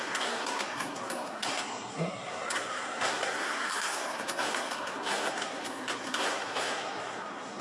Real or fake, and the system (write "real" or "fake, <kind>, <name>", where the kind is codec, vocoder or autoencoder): fake, codec, SNAC